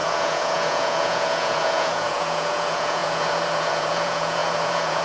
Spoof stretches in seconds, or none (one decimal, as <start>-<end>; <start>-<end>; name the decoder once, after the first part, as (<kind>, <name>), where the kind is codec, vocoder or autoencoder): 0.0-5.0 (vocoder, Vocos)